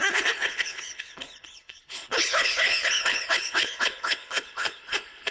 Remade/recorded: remade